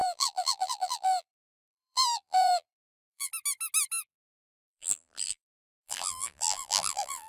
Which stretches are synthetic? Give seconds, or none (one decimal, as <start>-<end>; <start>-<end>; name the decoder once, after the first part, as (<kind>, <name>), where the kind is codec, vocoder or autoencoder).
0.0-3.3 (vocoder, BigVGAN v2); 4.1-7.3